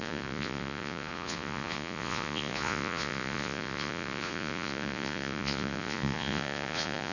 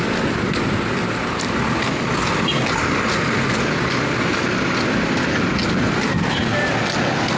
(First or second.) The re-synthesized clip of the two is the first